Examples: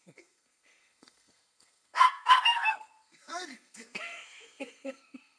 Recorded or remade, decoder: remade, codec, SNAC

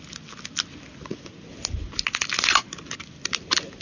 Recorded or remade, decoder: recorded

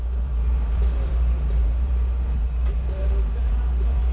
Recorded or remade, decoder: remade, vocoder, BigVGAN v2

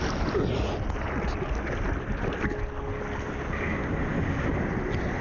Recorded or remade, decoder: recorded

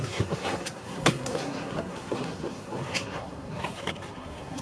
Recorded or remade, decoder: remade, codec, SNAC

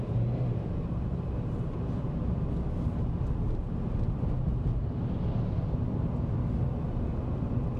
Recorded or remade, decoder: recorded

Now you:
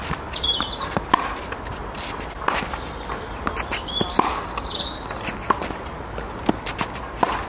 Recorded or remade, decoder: recorded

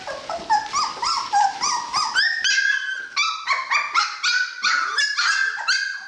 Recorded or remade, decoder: recorded